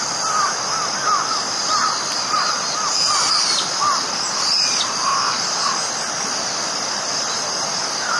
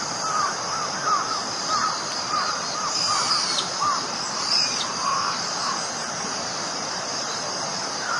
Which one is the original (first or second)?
first